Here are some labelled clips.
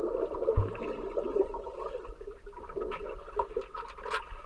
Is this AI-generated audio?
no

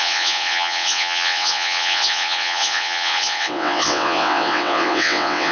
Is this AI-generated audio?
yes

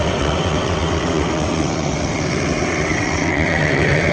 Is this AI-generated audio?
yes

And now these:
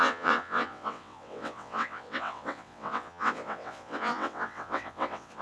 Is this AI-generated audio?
yes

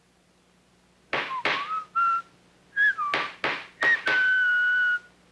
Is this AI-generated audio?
no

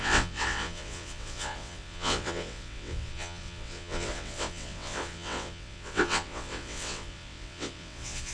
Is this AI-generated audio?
yes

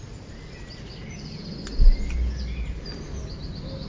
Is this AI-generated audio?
no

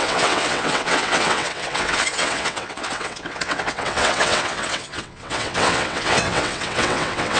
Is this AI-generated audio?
yes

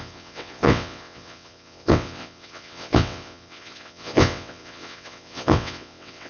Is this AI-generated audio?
yes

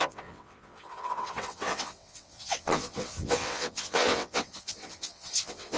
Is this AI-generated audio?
yes